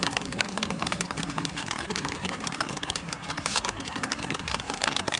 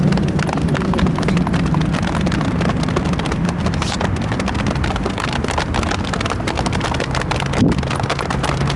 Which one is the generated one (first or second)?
first